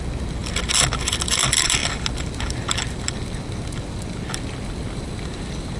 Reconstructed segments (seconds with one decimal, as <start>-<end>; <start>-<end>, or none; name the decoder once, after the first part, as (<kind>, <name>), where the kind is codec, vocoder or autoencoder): none